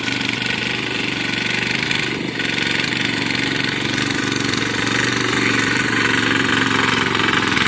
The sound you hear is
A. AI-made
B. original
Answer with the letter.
B